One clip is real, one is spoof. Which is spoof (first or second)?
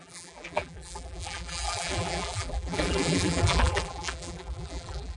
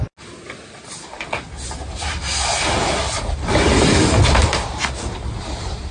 first